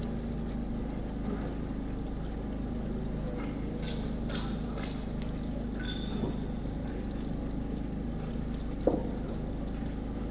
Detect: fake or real real